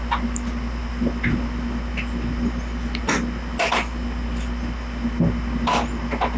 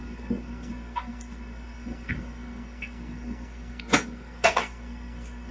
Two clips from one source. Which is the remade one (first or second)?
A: second